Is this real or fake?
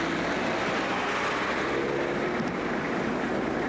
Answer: real